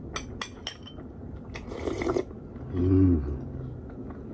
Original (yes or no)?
yes